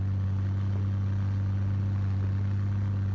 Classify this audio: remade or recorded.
recorded